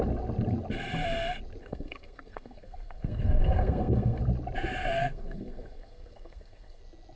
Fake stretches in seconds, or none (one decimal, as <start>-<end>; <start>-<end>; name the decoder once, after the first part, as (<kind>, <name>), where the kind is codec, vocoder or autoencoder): 1.6-4.2 (codec, SNAC); 4.9-6.8